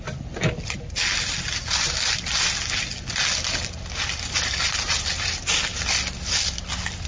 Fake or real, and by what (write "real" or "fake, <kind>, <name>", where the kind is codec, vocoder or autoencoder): real